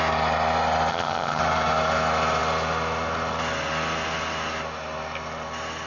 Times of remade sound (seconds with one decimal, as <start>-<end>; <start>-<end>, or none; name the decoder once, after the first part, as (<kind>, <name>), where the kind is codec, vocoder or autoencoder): 0.9-1.4 (vocoder, HiFi-GAN)